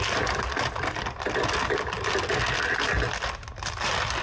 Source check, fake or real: real